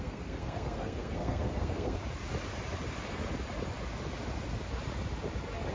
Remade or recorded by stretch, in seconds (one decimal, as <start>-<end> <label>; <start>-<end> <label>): 0.0-2.0 remade; 2.0-5.7 recorded